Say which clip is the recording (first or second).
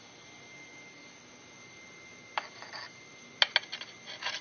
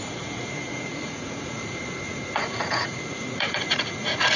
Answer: first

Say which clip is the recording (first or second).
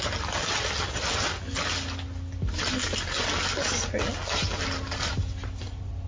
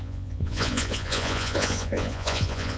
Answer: first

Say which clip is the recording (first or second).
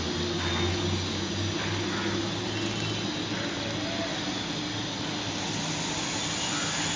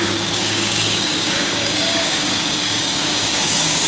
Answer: first